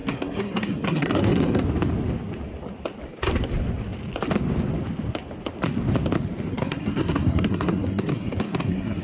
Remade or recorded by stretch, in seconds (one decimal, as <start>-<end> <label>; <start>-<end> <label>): 0.0-1.6 remade; 1.6-6.5 recorded; 6.5-9.0 remade